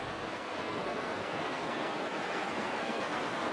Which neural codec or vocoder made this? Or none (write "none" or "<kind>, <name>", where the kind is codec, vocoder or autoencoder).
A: codec, SNAC